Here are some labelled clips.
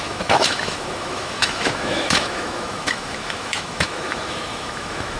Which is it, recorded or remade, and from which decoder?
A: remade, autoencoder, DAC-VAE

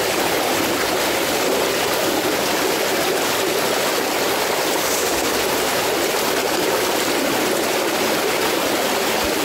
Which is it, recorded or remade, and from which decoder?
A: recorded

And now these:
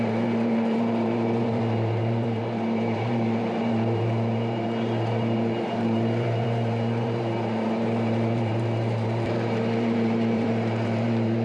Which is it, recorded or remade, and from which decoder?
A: remade, vocoder, BigVGAN v2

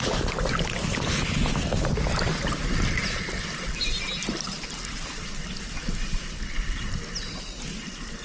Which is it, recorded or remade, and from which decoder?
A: recorded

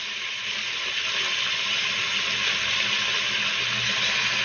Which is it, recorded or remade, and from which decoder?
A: recorded